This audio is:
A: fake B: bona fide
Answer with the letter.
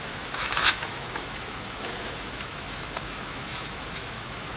A